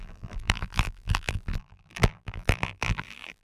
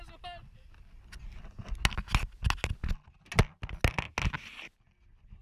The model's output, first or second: first